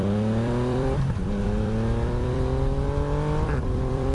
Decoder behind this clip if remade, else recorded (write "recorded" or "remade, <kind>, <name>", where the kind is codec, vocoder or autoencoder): remade, vocoder, BigVGAN v2